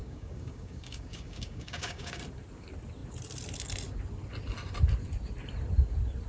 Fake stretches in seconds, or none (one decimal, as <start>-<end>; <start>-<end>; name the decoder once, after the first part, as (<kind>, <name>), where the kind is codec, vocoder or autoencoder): 0.0-2.2 (codec, DAC)